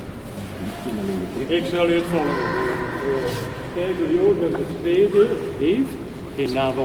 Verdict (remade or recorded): recorded